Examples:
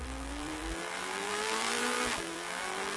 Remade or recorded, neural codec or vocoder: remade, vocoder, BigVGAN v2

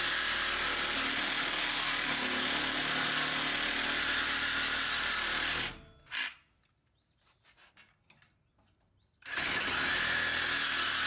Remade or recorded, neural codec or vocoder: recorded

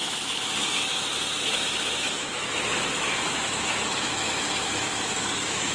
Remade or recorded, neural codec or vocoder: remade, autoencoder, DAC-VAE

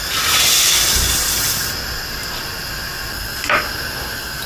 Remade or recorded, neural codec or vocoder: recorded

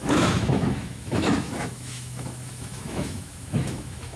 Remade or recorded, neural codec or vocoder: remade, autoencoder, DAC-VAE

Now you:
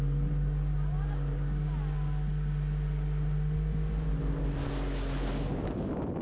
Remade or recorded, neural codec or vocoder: recorded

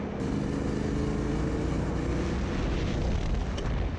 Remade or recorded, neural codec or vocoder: recorded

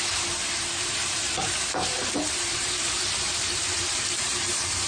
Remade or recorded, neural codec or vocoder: remade, vocoder, BigVGAN v2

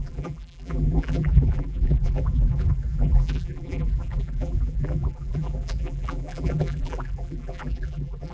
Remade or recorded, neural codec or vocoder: remade, vocoder, BigVGAN v2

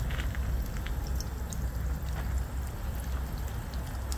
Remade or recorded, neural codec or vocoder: recorded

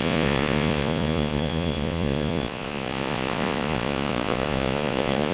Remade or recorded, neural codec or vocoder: remade, vocoder, Vocos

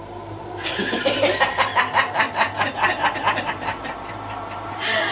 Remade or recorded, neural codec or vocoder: remade, vocoder, BigVGAN v2